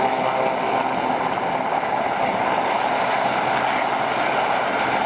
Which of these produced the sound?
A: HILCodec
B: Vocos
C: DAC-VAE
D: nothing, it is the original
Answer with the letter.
D